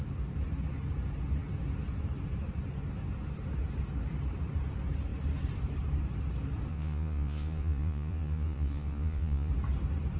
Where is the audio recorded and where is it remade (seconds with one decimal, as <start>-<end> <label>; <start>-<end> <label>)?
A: 0.0-6.7 recorded; 6.7-9.5 remade; 9.5-10.2 recorded